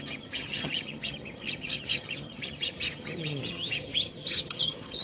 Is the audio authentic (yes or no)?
no